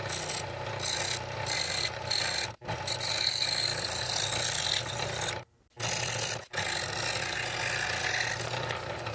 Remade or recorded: recorded